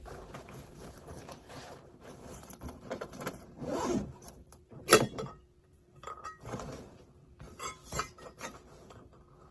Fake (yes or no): yes